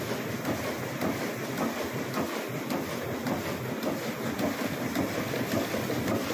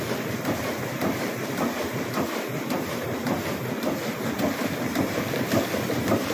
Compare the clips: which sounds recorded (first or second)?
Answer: first